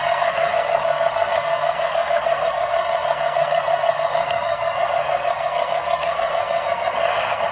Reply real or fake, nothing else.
fake